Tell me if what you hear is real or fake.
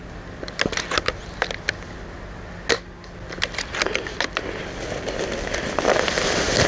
real